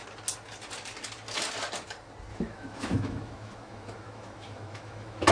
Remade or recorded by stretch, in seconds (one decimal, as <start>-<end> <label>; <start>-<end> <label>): 0.0-2.3 recorded; 2.3-5.3 remade